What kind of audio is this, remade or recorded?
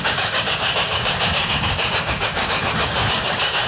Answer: remade